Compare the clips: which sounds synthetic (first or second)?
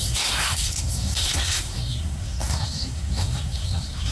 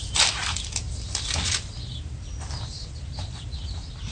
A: first